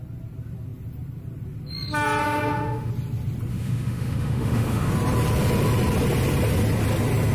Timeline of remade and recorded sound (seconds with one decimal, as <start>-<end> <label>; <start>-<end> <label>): 0.0-2.2 recorded; 2.2-2.9 remade; 2.9-3.5 recorded; 3.5-4.9 remade; 4.9-7.3 recorded